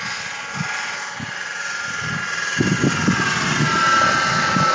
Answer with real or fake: real